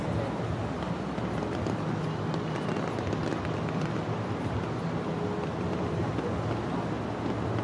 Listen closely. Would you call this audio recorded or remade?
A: recorded